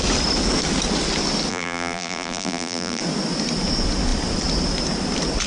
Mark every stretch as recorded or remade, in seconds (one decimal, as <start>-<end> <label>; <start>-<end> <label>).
0.0-1.5 recorded; 1.5-3.0 remade; 3.0-5.5 recorded